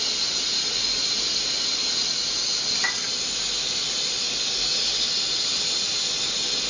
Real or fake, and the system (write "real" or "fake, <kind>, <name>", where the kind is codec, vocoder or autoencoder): real